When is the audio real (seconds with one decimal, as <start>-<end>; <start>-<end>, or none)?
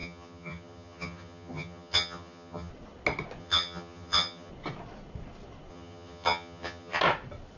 2.7-3.4; 4.5-5.7; 7.0-7.6